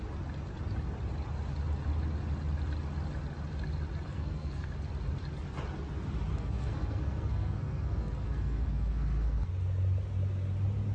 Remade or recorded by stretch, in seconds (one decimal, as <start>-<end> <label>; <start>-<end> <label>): 0.0-4.1 recorded; 4.1-4.7 remade; 4.7-6.3 recorded; 6.3-9.5 remade; 9.5-10.9 recorded